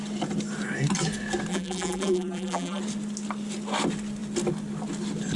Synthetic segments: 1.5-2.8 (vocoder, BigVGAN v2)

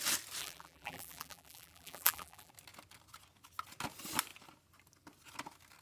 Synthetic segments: 0.4-2.5 (vocoder, BigVGAN v2)

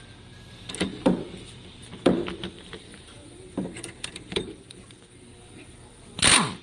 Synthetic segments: 2.9-4.9 (vocoder, BigVGAN v2)

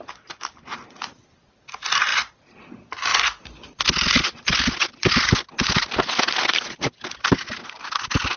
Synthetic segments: 2.1-2.7 (vocoder, BigVGAN v2)

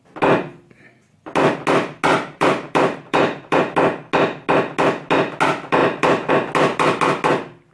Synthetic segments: 2.1-3.6 (vocoder, BigVGAN v2); 5.8-6.3